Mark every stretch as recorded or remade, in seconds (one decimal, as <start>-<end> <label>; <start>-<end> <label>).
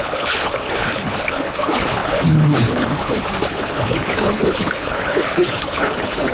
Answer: 0.0-6.3 remade